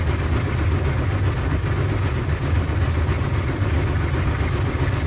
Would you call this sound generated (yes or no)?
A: no